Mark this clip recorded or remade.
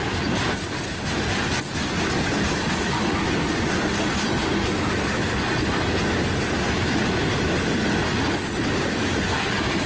recorded